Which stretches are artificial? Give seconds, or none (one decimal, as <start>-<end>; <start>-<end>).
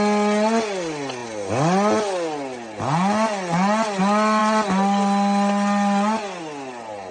none